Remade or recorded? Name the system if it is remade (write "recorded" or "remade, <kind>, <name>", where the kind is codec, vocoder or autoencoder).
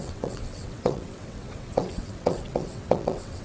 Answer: remade, vocoder, WaveNeXt